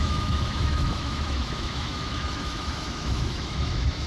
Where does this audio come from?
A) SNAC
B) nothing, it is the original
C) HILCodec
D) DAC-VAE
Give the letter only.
D